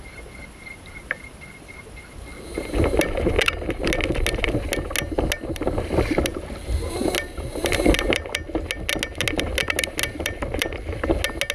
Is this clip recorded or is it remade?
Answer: recorded